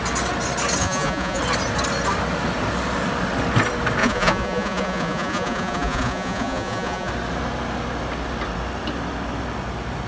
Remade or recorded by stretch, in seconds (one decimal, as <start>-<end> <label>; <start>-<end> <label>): 0.0-0.8 recorded; 0.8-1.4 remade; 1.4-4.0 recorded; 4.0-7.1 remade; 7.1-10.1 recorded